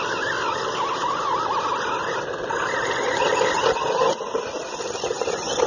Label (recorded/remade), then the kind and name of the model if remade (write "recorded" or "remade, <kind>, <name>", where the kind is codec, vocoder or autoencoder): recorded